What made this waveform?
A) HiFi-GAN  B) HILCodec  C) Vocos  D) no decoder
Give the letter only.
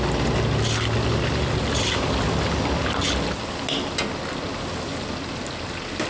D